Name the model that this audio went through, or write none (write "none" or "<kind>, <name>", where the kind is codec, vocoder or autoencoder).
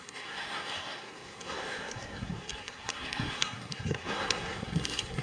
codec, SNAC